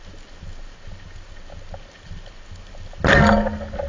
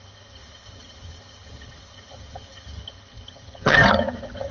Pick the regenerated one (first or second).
second